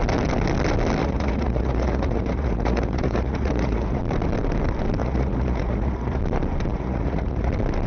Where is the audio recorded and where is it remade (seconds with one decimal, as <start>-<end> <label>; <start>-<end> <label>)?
0.0-1.0 recorded; 1.0-4.0 remade; 4.0-5.0 recorded; 5.0-6.2 remade; 6.2-6.7 recorded; 6.7-7.5 remade; 7.5-7.9 recorded